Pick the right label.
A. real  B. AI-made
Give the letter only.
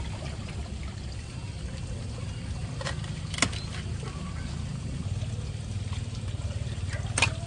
A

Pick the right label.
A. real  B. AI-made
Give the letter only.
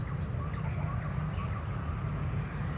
A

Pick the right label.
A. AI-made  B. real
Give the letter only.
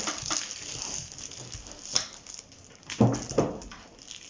B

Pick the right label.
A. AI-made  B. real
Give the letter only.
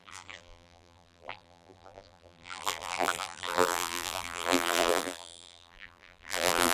A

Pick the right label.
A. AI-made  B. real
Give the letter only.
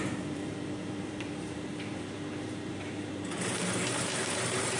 A